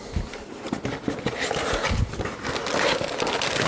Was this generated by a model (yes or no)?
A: no